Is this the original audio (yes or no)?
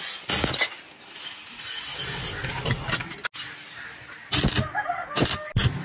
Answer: yes